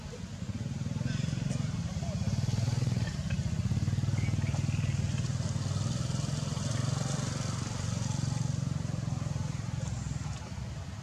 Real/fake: real